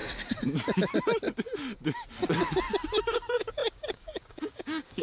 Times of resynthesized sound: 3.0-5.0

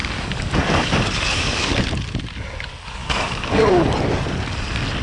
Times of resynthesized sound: 0.0-1.7; 3.0-3.8

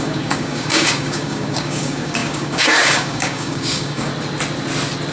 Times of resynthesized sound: 0.0-4.1